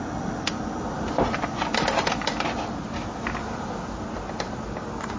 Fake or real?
real